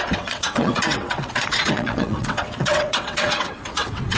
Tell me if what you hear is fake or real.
fake